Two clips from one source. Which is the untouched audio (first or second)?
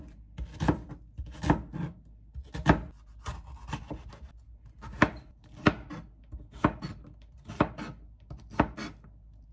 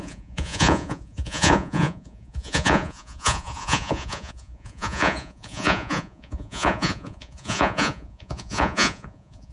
first